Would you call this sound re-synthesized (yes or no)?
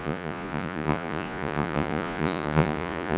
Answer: yes